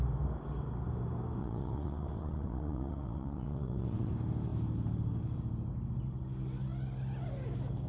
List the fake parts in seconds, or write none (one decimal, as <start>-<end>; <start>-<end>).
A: 1.4-4.1